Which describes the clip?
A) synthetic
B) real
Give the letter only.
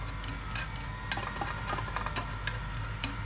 B